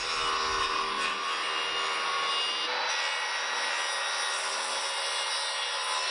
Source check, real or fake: real